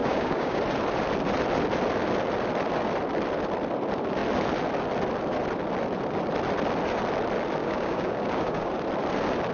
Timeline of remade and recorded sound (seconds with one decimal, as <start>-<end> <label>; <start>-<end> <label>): 0.0-0.6 remade; 0.6-7.6 recorded; 7.6-8.7 remade; 8.7-9.5 recorded